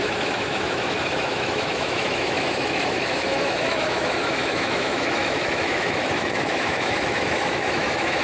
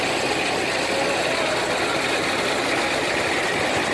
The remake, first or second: first